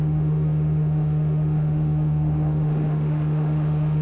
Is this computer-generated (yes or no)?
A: yes